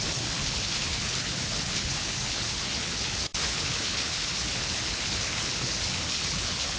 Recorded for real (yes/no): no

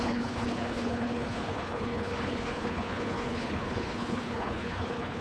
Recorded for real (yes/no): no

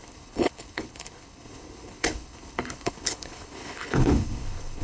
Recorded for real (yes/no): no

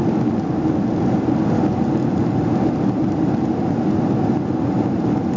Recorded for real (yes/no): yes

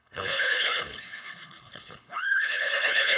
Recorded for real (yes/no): no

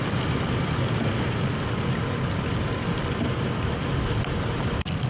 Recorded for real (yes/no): yes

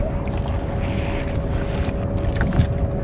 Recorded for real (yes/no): yes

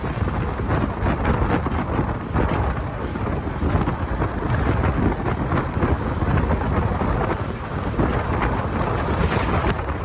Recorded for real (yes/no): yes